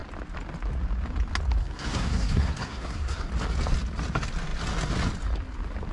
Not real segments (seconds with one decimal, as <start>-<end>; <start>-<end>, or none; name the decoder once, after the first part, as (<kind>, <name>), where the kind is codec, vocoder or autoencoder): 1.6-3.3 (codec, SNAC)